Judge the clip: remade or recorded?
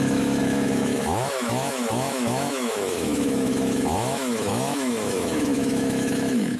remade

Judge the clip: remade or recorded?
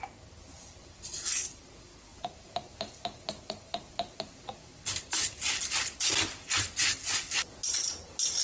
recorded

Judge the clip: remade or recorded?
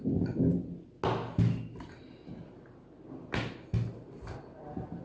recorded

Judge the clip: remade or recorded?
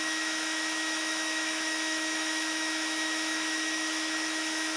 remade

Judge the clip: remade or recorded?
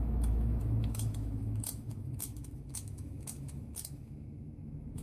remade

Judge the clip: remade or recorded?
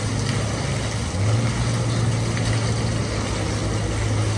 recorded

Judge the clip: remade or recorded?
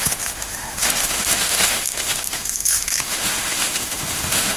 remade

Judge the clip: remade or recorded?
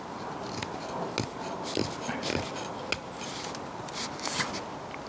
recorded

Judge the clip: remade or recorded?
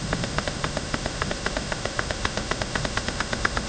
remade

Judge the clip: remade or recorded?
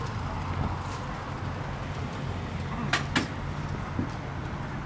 recorded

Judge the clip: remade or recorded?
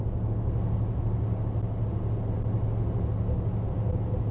recorded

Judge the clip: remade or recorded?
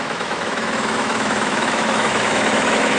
remade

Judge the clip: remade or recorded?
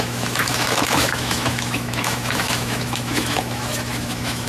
remade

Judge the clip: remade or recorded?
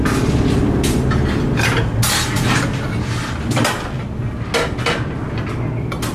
recorded